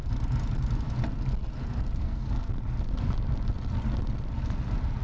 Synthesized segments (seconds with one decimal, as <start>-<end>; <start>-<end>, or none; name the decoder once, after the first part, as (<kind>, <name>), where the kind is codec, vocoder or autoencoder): 2.0-2.5 (codec, SNAC)